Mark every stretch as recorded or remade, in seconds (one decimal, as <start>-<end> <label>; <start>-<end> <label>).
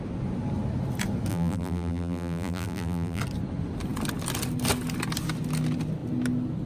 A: 0.0-1.3 recorded; 1.3-3.2 remade; 3.2-6.7 recorded